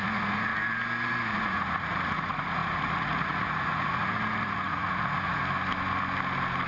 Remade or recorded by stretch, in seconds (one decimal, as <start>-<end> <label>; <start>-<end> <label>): 0.0-0.5 remade; 0.5-1.4 recorded; 1.4-5.4 remade; 5.4-6.7 recorded